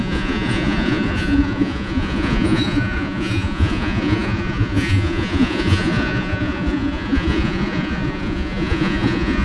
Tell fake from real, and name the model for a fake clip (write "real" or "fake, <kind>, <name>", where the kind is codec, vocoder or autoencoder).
fake, vocoder, Vocos